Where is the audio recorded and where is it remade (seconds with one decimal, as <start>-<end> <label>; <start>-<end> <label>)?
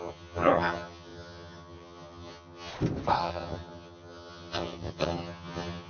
0.0-2.7 remade; 2.7-3.2 recorded; 3.2-5.9 remade